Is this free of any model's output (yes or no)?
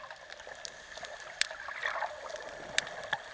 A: yes